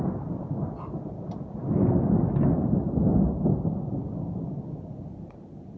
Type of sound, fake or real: real